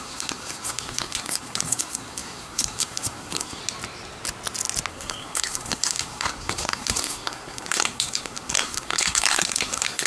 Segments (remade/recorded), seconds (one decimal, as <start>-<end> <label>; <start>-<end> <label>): 0.0-3.6 remade; 3.6-4.9 recorded; 4.9-10.1 remade